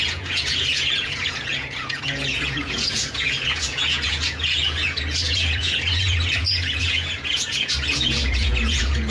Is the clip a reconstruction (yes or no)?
yes